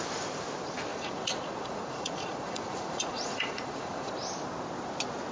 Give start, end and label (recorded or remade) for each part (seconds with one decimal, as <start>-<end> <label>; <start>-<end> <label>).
0.0-0.9 recorded; 0.9-4.1 remade; 4.1-5.3 recorded